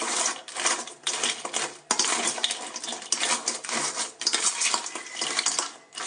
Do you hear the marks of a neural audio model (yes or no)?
no